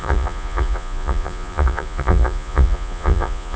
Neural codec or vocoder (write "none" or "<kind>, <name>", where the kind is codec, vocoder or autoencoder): vocoder, Vocos